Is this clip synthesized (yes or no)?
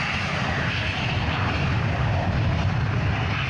no